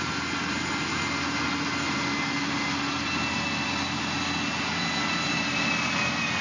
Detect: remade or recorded recorded